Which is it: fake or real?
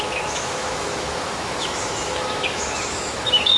fake